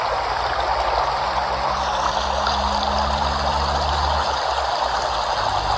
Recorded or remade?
recorded